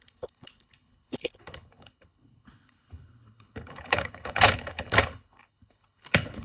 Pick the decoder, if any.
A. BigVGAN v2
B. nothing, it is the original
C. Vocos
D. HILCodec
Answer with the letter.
D